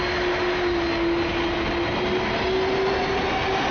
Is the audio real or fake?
real